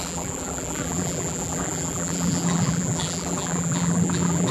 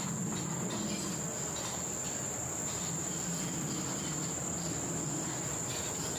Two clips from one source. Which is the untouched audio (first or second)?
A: second